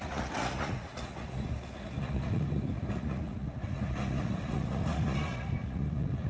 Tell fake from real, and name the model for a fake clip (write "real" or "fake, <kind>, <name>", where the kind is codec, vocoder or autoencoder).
fake, vocoder, Vocos